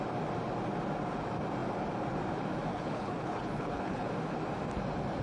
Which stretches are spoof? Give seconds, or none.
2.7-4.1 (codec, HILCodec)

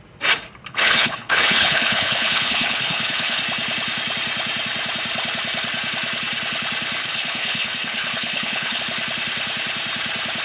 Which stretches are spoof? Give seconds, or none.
0.7-3.4 (codec, HILCodec); 7.0-8.8

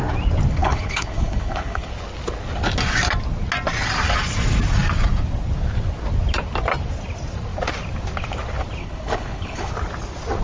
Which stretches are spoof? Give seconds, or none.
0.6-1.9 (codec, HILCodec); 8.8-9.7

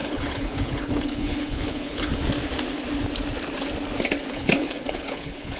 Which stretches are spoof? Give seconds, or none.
0.0-2.1 (codec, HILCodec); 4.3-5.6

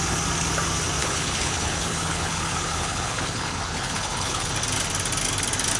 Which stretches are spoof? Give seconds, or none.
1.0-4.5 (codec, HILCodec)

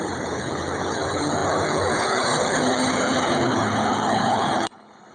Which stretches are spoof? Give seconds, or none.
0.0-5.1 (codec, HILCodec)

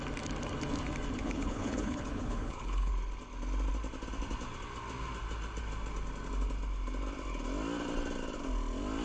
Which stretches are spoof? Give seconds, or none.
1.2-2.9 (codec, HILCodec)

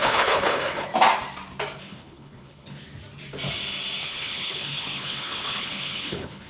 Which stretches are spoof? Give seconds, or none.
0.0-0.9 (codec, HILCodec); 1.8-2.8; 4.0-6.5